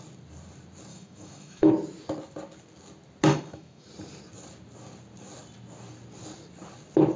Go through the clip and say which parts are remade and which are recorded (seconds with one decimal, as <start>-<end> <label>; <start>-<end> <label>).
0.0-0.9 recorded; 0.9-1.7 remade; 1.7-3.3 recorded; 3.3-3.9 remade; 3.9-7.2 recorded